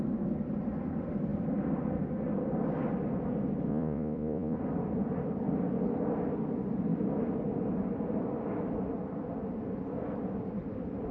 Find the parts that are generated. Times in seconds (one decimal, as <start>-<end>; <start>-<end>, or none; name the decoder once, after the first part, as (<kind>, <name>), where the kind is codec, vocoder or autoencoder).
3.7-4.6 (vocoder, Vocos)